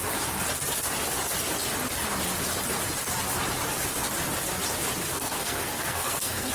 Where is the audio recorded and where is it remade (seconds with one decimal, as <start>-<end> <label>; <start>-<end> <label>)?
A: 0.0-5.1 recorded; 5.1-6.5 remade